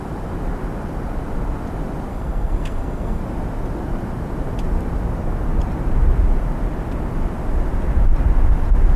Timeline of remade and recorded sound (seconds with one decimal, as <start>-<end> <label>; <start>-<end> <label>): 0.0-2.1 recorded; 2.1-3.2 remade; 3.2-9.0 recorded